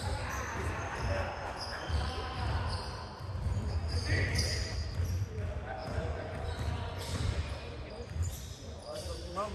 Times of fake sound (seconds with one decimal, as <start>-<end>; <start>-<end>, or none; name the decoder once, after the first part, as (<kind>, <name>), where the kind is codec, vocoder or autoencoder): 1.4-2.3 (vocoder, Vocos); 5.8-7.9; 8.3-9.1